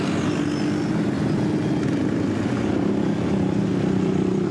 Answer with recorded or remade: recorded